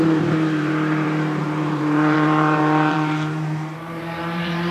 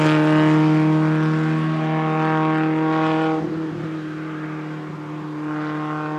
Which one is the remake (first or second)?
first